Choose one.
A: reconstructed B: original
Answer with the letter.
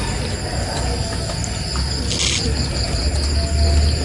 B